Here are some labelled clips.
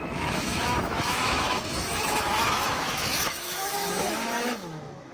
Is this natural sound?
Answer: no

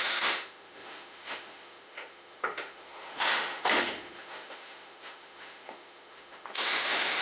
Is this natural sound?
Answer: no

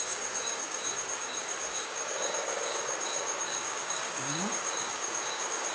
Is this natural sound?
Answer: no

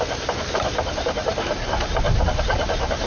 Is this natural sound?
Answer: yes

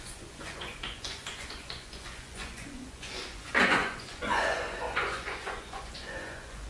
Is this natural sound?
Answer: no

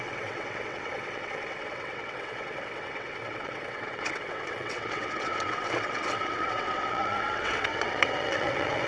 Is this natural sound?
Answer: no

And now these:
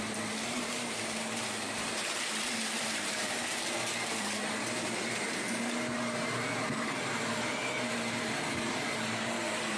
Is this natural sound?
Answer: no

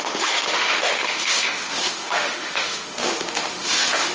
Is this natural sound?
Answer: no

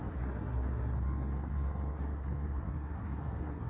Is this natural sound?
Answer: no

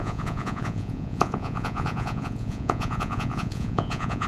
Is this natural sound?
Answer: no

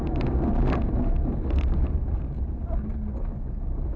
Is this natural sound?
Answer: yes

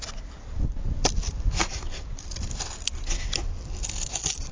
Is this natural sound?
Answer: yes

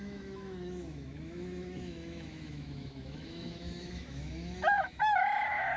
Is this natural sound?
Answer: no